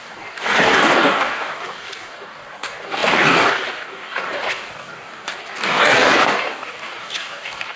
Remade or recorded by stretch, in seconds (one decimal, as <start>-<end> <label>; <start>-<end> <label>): 0.0-7.8 remade